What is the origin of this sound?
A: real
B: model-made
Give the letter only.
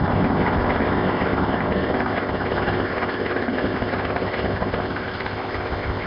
B